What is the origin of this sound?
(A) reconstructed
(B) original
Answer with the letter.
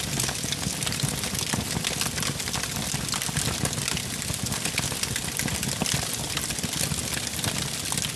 B